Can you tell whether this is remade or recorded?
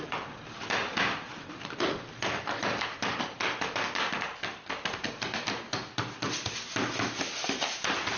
recorded